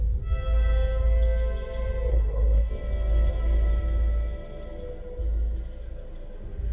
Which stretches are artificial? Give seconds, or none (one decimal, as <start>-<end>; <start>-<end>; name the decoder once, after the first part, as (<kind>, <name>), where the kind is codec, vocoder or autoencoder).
2.1-2.7 (codec, SNAC)